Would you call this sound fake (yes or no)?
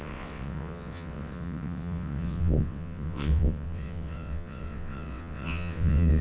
yes